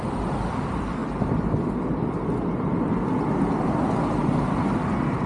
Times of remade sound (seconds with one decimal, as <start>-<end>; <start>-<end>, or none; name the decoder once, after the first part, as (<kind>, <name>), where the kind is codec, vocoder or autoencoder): none